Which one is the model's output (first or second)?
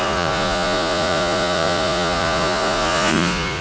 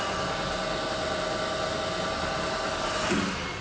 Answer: first